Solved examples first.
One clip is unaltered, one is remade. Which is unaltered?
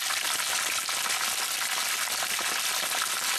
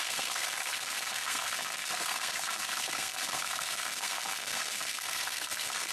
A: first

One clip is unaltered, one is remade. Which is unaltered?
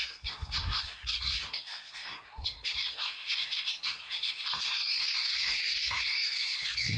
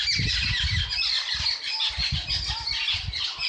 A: second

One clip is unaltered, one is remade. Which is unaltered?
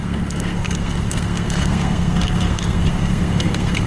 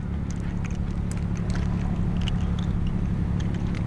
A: second